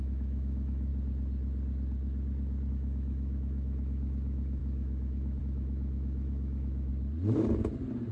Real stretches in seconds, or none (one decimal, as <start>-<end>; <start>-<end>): 0.9-2.7; 6.9-8.1